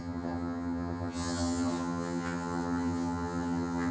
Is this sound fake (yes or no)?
yes